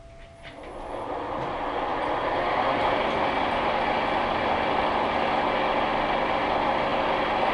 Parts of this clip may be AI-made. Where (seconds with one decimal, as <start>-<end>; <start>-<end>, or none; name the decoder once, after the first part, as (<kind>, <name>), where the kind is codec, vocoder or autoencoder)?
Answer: none